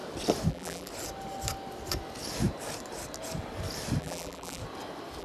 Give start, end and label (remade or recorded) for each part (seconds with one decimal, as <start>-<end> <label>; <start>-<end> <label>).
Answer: 0.0-0.5 recorded; 0.5-0.9 remade; 0.9-4.0 recorded; 4.0-4.6 remade; 4.6-5.2 recorded